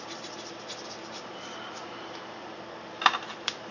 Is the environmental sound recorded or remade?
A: remade